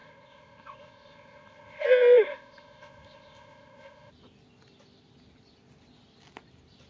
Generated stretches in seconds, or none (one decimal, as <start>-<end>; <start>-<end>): 0.0-4.1